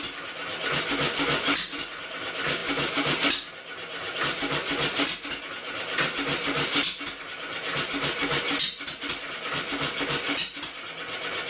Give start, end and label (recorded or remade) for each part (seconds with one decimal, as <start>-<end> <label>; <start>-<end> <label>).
0.0-11.5 recorded